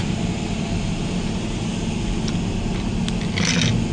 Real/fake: real